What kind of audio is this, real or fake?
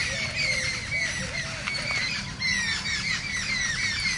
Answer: real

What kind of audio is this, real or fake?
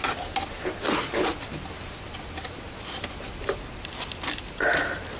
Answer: real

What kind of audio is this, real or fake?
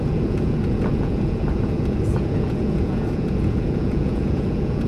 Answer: fake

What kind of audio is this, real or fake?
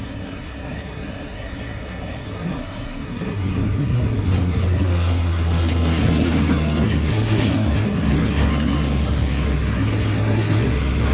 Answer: fake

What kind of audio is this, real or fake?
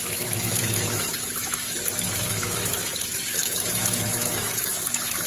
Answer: fake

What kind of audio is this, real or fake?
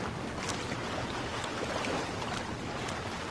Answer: real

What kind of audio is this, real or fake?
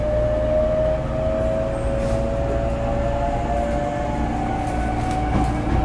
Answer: real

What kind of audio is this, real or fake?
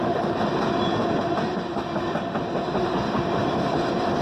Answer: real